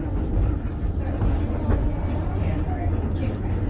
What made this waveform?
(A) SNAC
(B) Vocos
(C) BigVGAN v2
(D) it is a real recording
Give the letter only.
D